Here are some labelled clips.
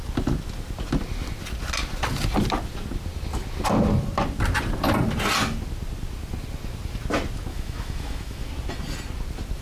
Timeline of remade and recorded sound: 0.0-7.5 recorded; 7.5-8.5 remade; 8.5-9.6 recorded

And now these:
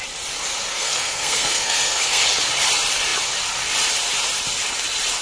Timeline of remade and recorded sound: 0.0-0.7 recorded; 0.7-2.2 remade; 2.2-5.2 recorded